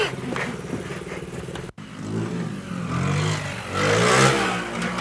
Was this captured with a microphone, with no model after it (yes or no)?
yes